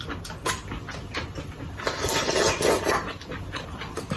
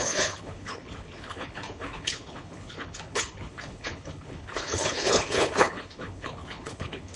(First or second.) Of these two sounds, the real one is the first